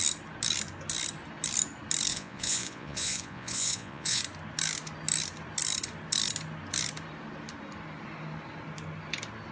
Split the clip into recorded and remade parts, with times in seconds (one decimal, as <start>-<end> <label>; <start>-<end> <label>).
0.0-2.1 recorded; 2.1-4.2 remade; 4.2-9.5 recorded